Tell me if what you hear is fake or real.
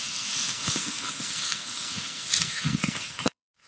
fake